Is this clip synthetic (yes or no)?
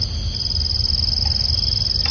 no